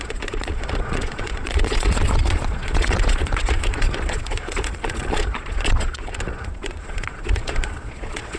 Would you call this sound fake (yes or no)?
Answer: yes